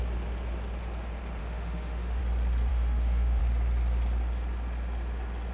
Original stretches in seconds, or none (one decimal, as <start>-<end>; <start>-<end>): 0.0-1.4; 2.2-2.7; 3.4-5.5